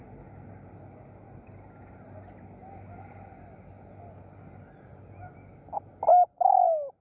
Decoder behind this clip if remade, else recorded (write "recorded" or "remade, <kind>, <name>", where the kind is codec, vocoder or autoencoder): recorded